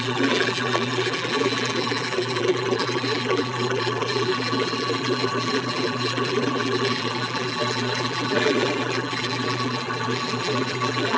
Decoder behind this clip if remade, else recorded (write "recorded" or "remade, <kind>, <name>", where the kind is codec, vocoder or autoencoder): remade, vocoder, BigVGAN v2